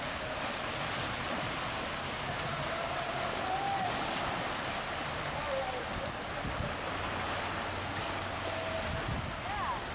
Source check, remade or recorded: recorded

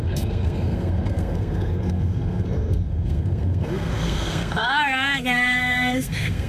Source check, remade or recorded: remade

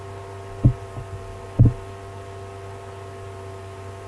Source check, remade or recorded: recorded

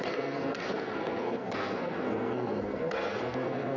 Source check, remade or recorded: remade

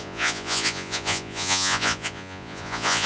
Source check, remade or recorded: remade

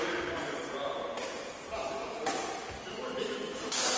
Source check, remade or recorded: recorded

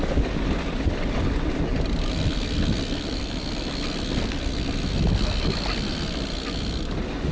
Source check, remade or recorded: recorded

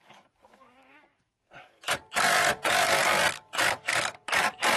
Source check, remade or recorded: remade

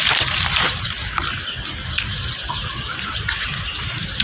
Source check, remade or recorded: remade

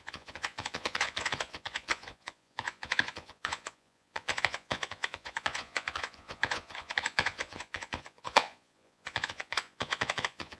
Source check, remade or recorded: remade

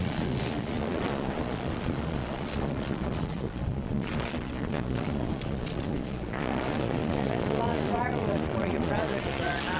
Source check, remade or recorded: remade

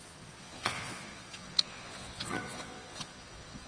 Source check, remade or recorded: remade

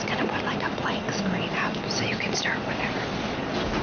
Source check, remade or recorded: recorded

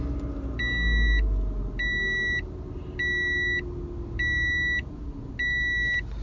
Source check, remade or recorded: recorded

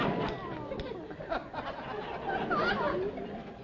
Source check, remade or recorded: recorded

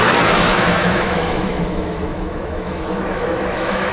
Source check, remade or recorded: remade